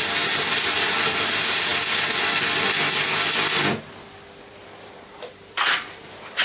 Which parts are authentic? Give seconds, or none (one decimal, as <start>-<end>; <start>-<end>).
1.7-4.5